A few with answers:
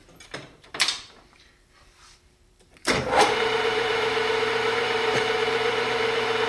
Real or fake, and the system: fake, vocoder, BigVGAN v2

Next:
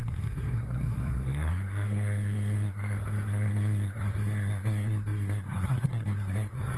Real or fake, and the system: fake, codec, SNAC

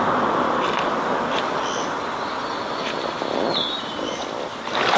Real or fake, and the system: real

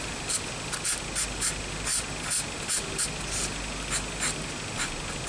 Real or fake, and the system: real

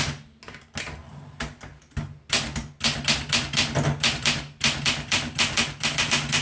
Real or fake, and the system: real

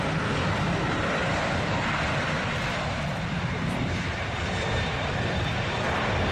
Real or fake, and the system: fake, vocoder, BigVGAN v2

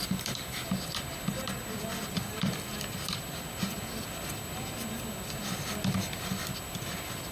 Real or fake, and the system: fake, vocoder, BigVGAN v2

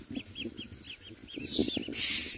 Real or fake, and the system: real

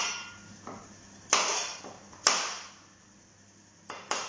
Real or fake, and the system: real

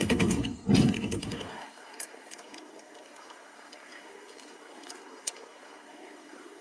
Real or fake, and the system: fake, codec, SNAC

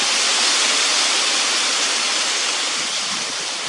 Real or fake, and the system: real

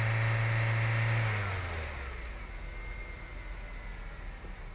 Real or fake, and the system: real